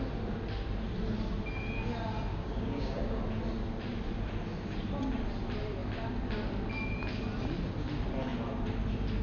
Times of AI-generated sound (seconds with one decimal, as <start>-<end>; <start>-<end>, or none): 2.3-3.2